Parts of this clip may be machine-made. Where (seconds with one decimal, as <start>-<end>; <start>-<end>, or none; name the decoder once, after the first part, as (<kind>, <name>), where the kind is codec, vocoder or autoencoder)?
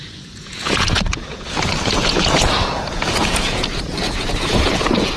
0.0-5.2 (vocoder, Vocos)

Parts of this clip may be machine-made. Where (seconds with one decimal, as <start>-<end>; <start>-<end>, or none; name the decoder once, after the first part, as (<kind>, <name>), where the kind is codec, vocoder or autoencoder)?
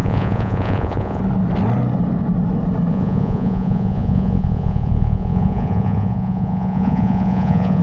0.0-1.2 (vocoder, Vocos); 2.9-7.8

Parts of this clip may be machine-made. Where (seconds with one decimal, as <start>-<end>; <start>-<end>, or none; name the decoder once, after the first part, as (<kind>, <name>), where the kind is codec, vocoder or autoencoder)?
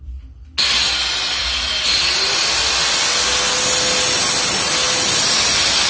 none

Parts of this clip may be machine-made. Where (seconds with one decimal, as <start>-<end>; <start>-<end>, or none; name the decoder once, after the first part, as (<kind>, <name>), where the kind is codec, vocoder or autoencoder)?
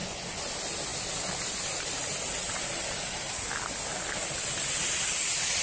0.0-0.5 (vocoder, Vocos)